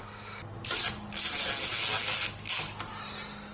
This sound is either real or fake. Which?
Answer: real